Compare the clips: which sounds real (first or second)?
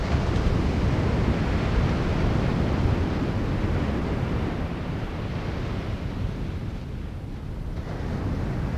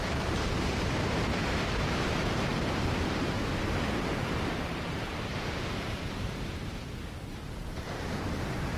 first